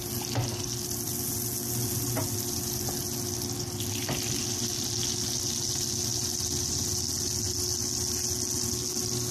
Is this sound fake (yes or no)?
no